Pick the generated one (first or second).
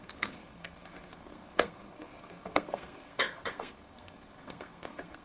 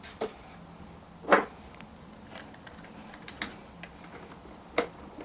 first